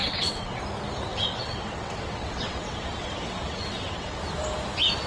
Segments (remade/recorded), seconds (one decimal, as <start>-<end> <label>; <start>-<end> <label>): 0.0-0.6 remade; 0.6-1.1 recorded; 1.1-4.2 remade; 4.2-5.1 recorded